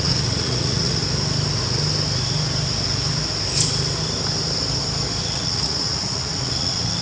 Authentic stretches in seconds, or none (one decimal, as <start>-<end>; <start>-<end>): 1.0-5.2